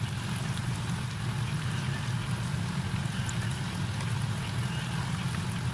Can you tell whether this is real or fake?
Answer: real